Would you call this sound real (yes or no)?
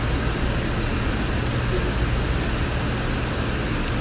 yes